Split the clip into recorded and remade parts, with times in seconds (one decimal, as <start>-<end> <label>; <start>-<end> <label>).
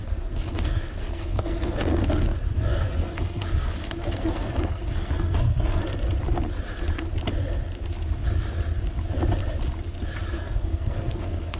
0.0-5.8 remade; 5.8-10.3 recorded; 10.3-11.6 remade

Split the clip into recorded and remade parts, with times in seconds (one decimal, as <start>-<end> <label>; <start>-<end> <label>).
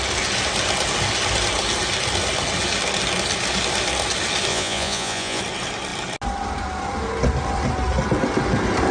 0.0-4.5 recorded; 4.5-5.4 remade; 5.4-8.9 recorded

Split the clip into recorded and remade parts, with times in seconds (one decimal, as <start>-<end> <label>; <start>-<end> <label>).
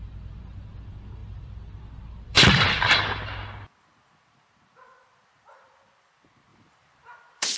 0.0-1.2 recorded; 1.2-1.8 remade; 1.8-2.3 recorded; 2.3-3.0 remade; 3.0-6.5 recorded; 6.5-7.6 remade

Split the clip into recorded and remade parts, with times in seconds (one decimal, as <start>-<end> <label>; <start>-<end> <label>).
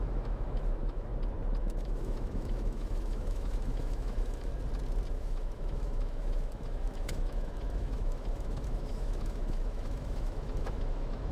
0.0-1.1 remade; 1.1-1.6 recorded; 1.6-4.5 remade; 4.5-5.1 recorded; 5.1-11.3 remade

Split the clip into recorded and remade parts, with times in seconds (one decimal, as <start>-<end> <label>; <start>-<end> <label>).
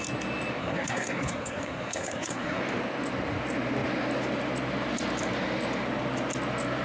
0.0-0.6 recorded; 0.6-2.6 remade; 2.6-6.8 recorded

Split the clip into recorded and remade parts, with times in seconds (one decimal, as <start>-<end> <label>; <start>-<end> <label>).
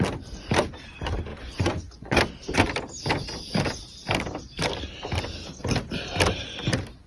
0.0-1.3 recorded; 1.3-2.2 remade; 2.2-7.1 recorded